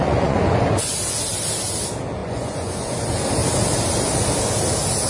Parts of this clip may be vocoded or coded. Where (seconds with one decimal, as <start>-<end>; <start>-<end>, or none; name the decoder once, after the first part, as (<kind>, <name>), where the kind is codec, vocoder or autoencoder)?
0.0-0.9 (vocoder, Vocos); 2.2-2.9